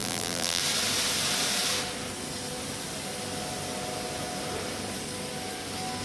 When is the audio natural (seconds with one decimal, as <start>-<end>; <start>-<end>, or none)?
0.6-6.0